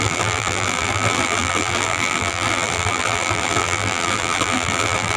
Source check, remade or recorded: remade